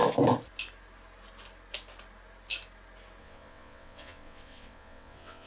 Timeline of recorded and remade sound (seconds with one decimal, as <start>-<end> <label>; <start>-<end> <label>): 0.0-3.2 recorded; 3.2-5.5 remade